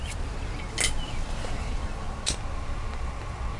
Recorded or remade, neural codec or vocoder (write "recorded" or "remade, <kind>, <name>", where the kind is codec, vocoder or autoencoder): recorded